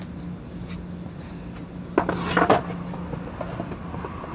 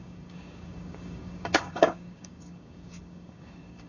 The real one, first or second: first